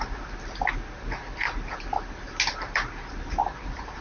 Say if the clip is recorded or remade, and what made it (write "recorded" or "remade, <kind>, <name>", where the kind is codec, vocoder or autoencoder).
recorded